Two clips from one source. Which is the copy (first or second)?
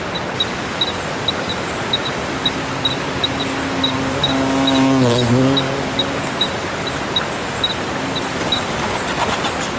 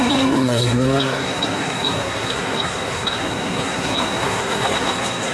second